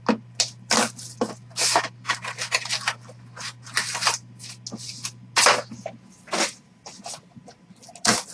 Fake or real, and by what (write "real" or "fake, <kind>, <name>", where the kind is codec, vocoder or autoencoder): real